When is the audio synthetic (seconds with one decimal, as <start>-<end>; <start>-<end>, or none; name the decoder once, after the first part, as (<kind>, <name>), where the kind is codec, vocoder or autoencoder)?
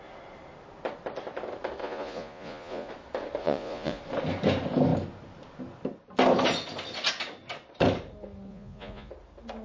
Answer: 1.8-2.9 (vocoder, Vocos); 3.4-4.0; 8.5-9.1